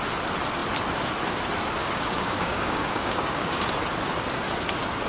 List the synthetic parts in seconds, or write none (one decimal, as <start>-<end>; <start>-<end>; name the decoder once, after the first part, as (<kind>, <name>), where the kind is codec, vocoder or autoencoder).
1.8-3.7 (codec, DAC)